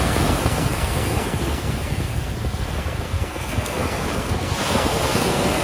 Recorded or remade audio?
remade